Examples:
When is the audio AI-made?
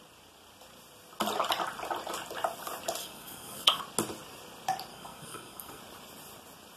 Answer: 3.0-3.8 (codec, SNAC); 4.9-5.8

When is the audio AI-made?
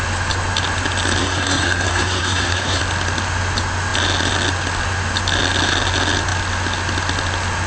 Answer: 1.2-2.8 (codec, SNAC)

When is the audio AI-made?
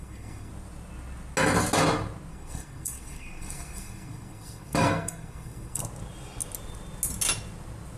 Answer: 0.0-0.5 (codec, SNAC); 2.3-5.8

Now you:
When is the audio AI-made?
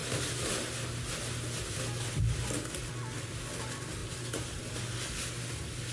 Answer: 4.0-4.6 (vocoder, BigVGAN v2)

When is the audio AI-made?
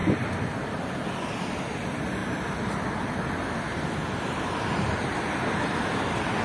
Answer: none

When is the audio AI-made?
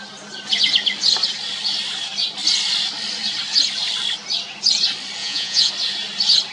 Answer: 5.2-5.7 (vocoder, Vocos)